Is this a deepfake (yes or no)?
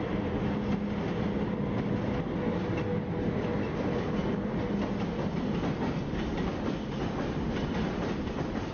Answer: no